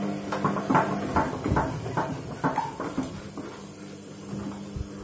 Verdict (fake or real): real